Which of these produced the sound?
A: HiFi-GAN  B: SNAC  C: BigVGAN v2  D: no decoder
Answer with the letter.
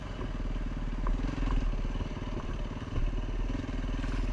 D